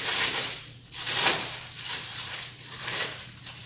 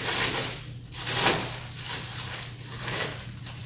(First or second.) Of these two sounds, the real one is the second